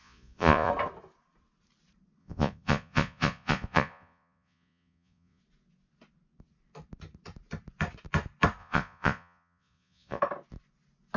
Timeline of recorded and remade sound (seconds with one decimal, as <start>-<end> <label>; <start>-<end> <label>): 0.0-0.7 remade; 0.7-2.2 recorded; 2.2-5.4 remade; 5.4-8.6 recorded; 8.6-10.2 remade; 10.2-11.2 recorded